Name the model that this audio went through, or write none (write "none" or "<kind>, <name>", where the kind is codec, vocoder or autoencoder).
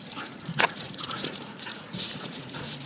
vocoder, Vocos